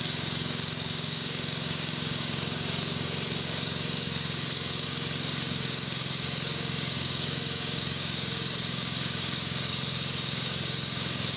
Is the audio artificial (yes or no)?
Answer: yes